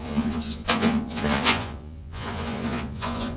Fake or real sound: fake